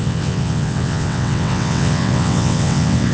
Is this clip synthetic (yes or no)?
yes